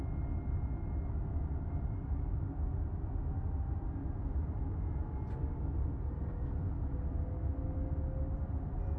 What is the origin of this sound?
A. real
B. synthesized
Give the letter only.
A